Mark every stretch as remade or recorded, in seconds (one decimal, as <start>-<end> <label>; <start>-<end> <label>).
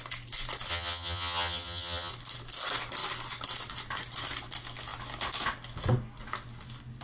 0.0-0.7 recorded; 0.7-2.1 remade; 2.1-7.0 recorded